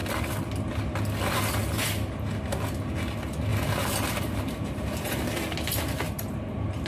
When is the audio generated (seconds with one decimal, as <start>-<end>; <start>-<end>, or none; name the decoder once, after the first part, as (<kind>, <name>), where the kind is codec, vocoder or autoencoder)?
none